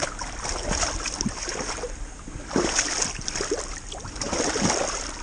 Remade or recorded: recorded